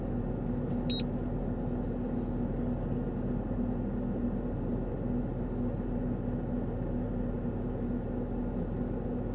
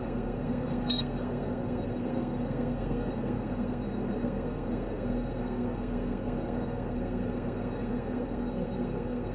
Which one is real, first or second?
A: first